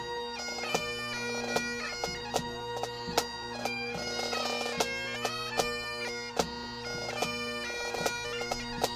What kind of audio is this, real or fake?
real